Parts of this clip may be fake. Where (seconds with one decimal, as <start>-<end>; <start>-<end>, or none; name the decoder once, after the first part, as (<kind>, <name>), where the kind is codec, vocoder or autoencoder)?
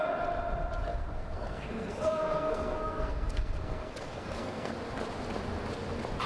0.9-4.7 (codec, SNAC)